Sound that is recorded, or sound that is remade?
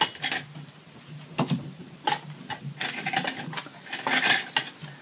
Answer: recorded